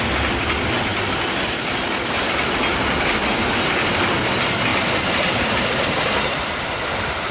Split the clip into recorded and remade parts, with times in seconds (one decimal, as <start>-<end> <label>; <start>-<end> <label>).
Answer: 0.0-4.7 recorded; 4.7-7.3 remade